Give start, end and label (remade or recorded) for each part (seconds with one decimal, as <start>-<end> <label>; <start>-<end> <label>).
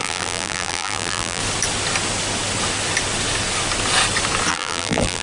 0.0-1.4 remade; 1.4-4.5 recorded; 4.5-5.2 remade